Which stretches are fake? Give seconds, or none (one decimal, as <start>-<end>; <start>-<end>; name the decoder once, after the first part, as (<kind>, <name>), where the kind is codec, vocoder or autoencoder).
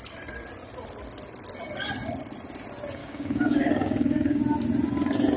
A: 3.0-4.4 (codec, DAC)